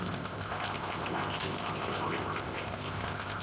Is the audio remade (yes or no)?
yes